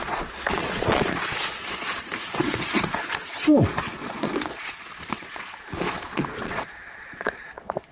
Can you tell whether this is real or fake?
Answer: fake